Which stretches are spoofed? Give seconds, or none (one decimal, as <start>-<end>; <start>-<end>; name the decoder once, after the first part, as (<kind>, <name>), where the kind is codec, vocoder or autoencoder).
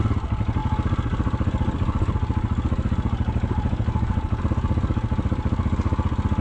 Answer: none